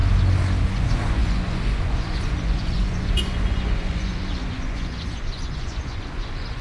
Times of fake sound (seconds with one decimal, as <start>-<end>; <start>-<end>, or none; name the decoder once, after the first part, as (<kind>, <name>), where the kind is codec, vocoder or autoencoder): 0.6-6.6 (vocoder, Vocos)